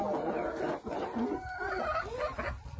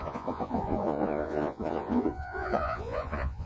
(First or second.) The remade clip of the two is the second